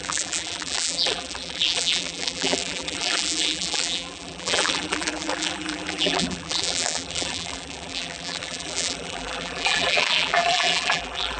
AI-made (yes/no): yes